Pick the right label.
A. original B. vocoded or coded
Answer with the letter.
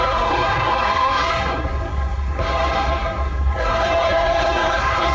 B